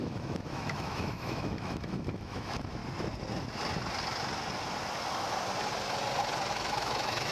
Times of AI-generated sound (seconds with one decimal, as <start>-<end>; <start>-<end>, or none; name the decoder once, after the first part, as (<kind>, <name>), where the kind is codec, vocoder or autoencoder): 0.0-2.8 (autoencoder, DAC-VAE); 6.5-7.3